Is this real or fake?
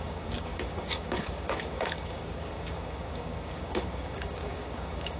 fake